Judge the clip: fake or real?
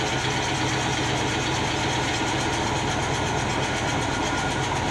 real